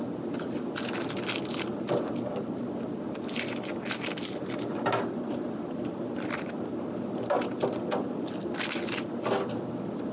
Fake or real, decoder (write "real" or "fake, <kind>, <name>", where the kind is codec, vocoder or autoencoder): real